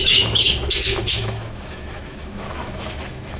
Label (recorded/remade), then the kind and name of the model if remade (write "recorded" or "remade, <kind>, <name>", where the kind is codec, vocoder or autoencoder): remade, autoencoder, DAC-VAE